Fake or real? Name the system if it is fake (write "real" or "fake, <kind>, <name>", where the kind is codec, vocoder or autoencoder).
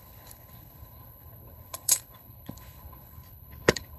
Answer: fake, codec, HILCodec